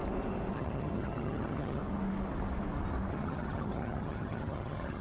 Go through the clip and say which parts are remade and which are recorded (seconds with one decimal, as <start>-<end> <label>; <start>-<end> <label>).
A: 0.0-0.5 recorded; 0.5-1.8 remade; 1.8-3.1 recorded; 3.1-5.0 remade